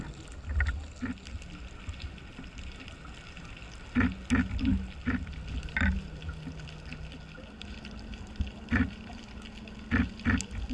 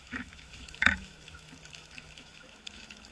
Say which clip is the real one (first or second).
first